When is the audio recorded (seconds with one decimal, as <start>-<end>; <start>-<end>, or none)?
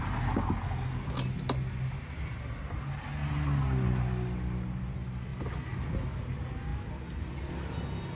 0.0-8.1